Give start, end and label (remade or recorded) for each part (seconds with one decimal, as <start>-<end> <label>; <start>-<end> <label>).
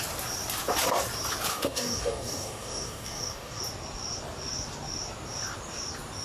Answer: 0.0-1.5 recorded; 1.5-3.6 remade; 3.6-6.2 recorded